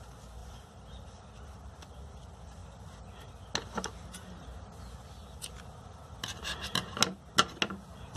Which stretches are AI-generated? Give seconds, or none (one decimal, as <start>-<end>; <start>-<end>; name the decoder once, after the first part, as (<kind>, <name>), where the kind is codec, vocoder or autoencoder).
0.4-1.3 (vocoder, BigVGAN v2); 6.4-7.0